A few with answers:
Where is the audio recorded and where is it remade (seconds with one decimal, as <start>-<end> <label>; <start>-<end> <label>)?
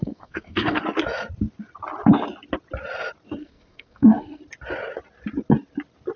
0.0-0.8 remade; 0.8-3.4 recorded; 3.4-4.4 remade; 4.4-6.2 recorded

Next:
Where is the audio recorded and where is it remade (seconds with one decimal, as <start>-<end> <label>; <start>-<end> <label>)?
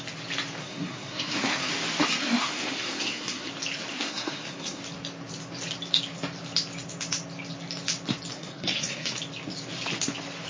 0.0-0.6 recorded; 0.6-1.7 remade; 1.7-2.2 recorded; 2.2-3.5 remade; 3.5-3.9 recorded; 3.9-4.8 remade; 4.8-8.3 recorded; 8.3-9.2 remade; 9.2-10.5 recorded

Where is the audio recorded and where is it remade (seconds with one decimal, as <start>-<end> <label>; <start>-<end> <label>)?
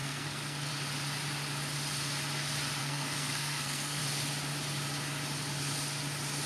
0.0-0.7 remade; 0.7-2.8 recorded; 2.8-4.0 remade; 4.0-6.5 recorded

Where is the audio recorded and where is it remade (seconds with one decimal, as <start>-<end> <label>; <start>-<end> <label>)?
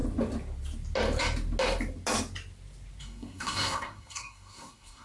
0.0-3.0 recorded; 3.0-5.0 remade